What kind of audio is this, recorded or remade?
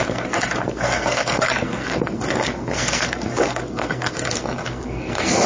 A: remade